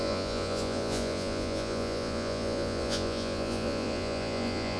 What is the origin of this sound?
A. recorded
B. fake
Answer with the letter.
B